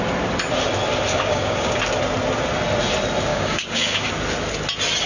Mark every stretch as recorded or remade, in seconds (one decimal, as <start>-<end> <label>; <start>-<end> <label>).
0.0-1.1 recorded; 1.1-1.8 remade; 1.8-3.3 recorded; 3.3-4.1 remade; 4.1-5.1 recorded